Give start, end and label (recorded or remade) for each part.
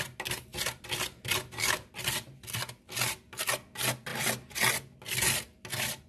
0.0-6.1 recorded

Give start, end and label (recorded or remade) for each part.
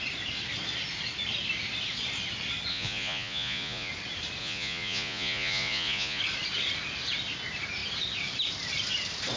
0.0-2.7 recorded; 2.7-3.9 remade; 3.9-4.4 recorded; 4.4-6.2 remade; 6.2-9.4 recorded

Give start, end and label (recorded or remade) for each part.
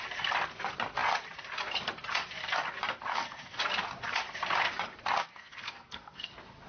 0.0-3.1 recorded; 3.1-3.6 remade; 3.6-5.2 recorded; 5.2-6.3 remade; 6.3-6.7 recorded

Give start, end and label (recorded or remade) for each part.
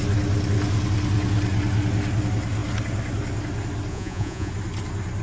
0.0-3.9 recorded; 3.9-4.5 remade; 4.5-5.2 recorded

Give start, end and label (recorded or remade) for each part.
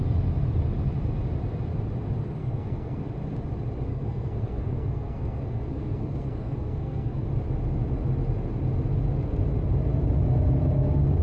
0.0-2.4 recorded; 2.4-3.0 remade; 3.0-3.9 recorded; 3.9-7.3 remade; 7.3-11.2 recorded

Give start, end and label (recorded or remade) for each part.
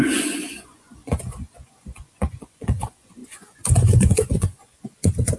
0.0-5.4 remade